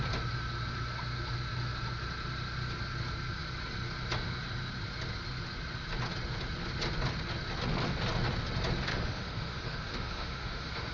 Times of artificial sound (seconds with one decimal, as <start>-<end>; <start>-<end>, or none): 8.9-10.9